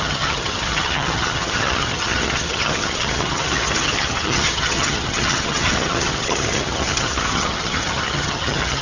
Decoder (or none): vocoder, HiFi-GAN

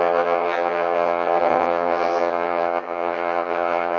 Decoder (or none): vocoder, HiFi-GAN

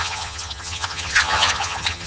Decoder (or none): vocoder, HiFi-GAN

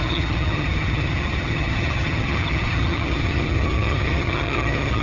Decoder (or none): vocoder, HiFi-GAN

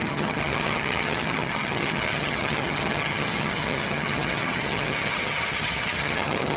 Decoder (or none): vocoder, HiFi-GAN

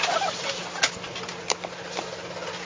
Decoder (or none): none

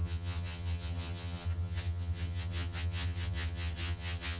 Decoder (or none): vocoder, HiFi-GAN